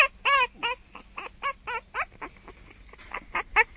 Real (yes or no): yes